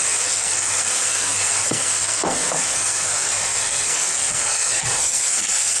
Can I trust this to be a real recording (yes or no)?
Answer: no